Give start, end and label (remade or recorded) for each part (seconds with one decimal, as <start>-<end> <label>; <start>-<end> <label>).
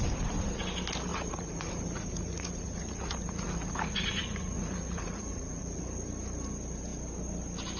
0.0-1.1 recorded; 1.1-5.8 remade; 5.8-7.8 recorded